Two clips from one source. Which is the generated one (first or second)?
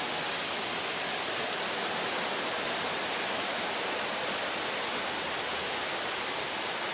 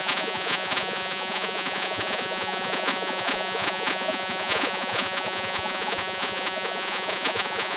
second